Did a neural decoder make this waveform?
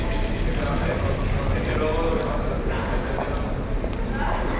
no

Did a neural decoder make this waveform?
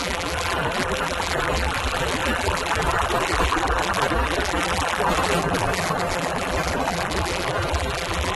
yes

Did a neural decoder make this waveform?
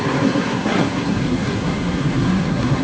yes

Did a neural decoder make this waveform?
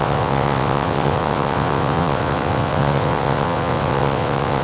yes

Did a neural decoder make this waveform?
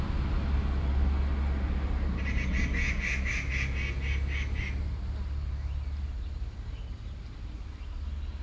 no